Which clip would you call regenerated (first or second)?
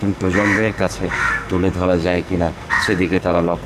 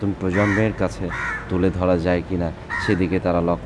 first